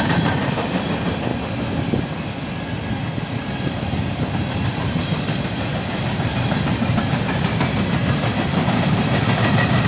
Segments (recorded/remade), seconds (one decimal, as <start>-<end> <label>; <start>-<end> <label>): 0.0-1.3 remade; 1.3-4.3 recorded; 4.3-9.9 remade